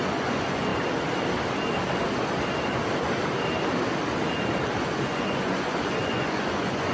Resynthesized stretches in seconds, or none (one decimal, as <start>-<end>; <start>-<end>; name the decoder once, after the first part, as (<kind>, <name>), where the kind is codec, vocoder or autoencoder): 0.0-0.7 (vocoder, Vocos); 4.8-6.9